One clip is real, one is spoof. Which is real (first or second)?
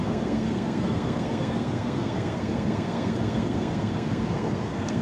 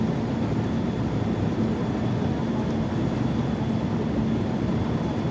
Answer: second